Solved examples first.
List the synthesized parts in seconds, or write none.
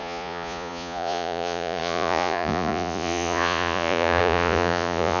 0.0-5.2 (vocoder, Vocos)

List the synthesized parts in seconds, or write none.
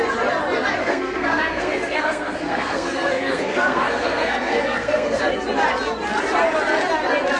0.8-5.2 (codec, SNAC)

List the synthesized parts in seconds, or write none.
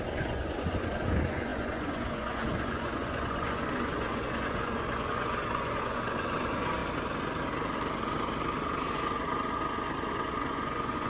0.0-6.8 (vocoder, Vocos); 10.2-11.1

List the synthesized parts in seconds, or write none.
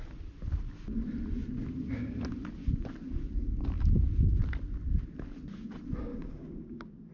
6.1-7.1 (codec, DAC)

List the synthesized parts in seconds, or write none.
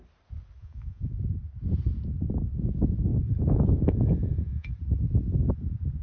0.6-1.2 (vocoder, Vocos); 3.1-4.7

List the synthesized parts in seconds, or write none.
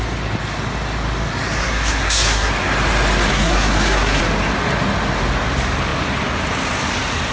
1.6-2.5 (codec, SNAC); 3.3-4.2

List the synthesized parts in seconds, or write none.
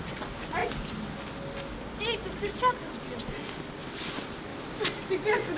none